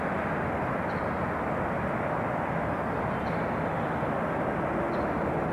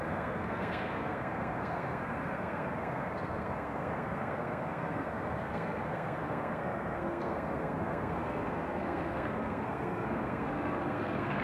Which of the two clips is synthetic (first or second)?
second